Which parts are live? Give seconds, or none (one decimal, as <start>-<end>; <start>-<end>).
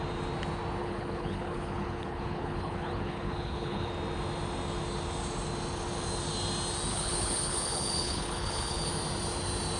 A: 0.0-0.8; 3.9-6.9; 8.9-9.8